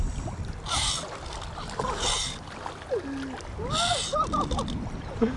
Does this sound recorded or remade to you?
recorded